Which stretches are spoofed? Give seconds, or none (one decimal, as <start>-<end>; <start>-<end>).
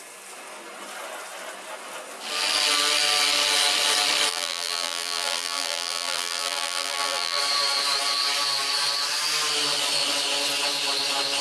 4.3-7.4